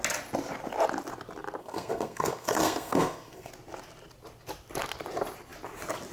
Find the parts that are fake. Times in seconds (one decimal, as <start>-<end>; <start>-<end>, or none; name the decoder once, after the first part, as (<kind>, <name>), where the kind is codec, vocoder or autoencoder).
1.6-3.5 (codec, SNAC)